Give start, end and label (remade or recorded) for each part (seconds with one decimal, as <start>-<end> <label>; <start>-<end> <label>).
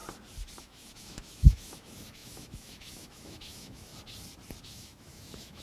0.0-0.6 recorded; 0.6-3.9 remade; 3.9-4.6 recorded; 4.6-5.6 remade